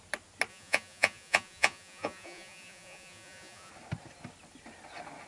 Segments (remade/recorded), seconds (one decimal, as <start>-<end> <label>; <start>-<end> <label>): 0.0-0.5 recorded; 0.5-3.7 remade; 3.7-5.3 recorded